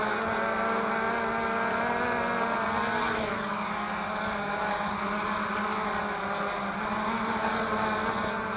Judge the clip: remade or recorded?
recorded